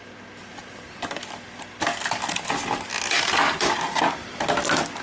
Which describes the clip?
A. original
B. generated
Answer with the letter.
A